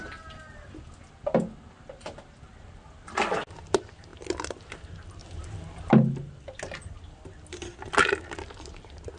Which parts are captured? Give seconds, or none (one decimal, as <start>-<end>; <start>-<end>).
0.0-2.5; 3.4-4.1; 4.7-5.2; 5.9-9.2